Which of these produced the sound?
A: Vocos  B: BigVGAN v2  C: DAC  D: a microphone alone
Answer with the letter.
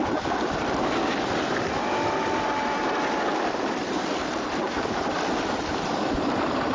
B